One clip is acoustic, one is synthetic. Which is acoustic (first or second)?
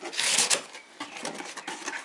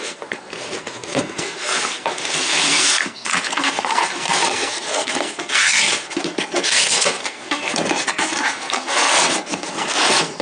first